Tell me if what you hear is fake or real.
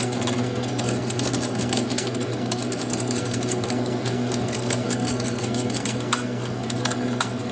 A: fake